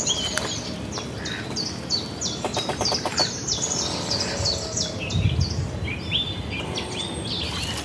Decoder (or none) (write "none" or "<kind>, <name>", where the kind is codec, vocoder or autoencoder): none